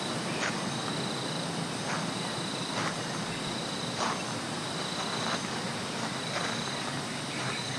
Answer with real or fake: real